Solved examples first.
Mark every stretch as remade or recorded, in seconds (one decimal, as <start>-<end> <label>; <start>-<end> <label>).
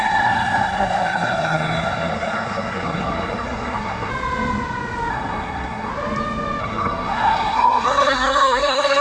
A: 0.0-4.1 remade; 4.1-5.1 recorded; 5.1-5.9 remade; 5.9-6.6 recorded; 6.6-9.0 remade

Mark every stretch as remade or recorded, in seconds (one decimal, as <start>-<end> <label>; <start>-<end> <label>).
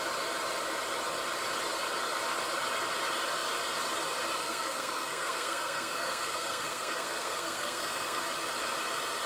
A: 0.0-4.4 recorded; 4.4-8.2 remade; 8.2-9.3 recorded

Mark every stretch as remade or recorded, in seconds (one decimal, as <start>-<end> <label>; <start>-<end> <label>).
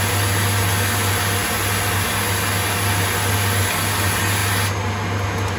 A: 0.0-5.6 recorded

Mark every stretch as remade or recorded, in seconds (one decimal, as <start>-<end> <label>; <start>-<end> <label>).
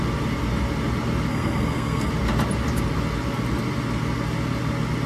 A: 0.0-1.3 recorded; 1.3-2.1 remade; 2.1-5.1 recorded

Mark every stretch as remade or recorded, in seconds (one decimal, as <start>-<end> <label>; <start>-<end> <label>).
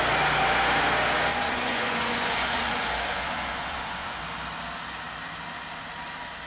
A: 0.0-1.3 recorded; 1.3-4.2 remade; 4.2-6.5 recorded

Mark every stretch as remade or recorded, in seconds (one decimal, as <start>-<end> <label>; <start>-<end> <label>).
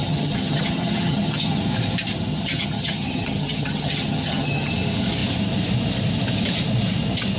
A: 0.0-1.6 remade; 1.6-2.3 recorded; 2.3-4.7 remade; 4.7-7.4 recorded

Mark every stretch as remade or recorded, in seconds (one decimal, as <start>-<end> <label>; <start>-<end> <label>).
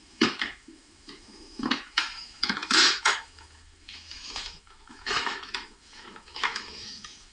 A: 0.0-7.3 remade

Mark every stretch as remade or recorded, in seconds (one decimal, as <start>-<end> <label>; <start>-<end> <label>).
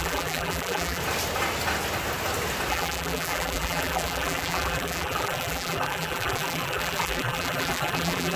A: 0.0-1.0 remade; 1.0-2.7 recorded; 2.7-8.4 remade